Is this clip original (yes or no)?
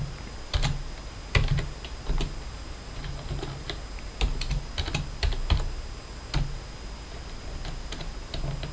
yes